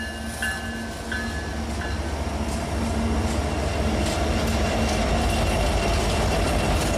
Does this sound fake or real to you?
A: real